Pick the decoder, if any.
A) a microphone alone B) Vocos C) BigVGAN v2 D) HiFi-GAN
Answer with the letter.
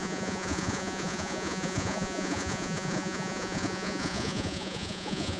B